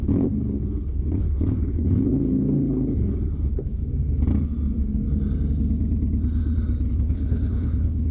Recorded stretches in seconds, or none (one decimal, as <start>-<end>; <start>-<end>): 3.8-6.9